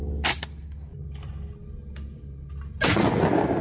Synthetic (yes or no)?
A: no